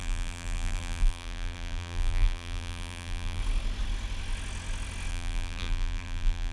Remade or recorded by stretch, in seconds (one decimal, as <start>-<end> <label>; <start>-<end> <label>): 0.0-3.4 remade; 3.4-5.1 recorded; 5.1-6.5 remade